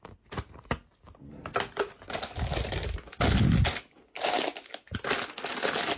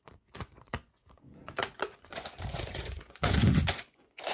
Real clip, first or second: first